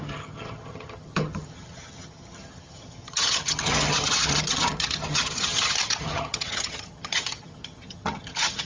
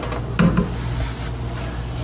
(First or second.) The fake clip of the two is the first